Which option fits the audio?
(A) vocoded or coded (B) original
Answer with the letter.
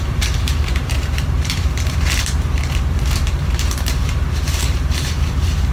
A